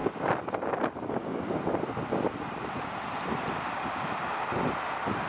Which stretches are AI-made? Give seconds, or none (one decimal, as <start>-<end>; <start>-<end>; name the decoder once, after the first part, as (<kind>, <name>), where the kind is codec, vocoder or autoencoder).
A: none